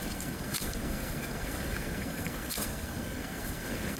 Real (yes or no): no